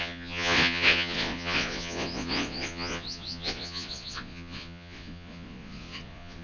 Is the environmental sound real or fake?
fake